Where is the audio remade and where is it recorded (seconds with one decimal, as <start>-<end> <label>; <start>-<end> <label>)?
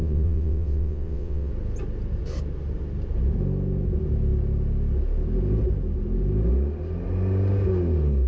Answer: 0.0-1.5 remade; 1.5-8.3 recorded